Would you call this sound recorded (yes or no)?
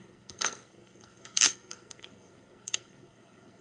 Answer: no